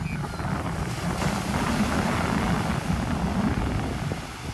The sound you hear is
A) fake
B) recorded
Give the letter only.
B